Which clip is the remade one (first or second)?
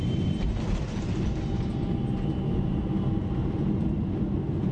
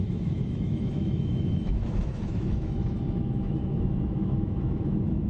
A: second